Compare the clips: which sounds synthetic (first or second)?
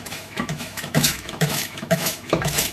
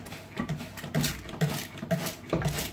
first